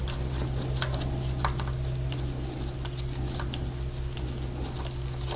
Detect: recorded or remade recorded